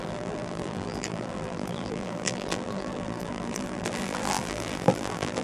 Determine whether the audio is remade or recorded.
remade